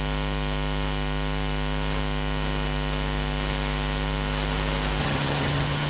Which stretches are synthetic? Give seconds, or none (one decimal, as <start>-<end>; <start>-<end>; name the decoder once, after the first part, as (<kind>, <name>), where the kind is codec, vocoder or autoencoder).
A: 5.0-5.9 (vocoder, HiFi-GAN)